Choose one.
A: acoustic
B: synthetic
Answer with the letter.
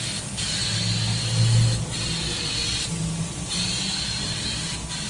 A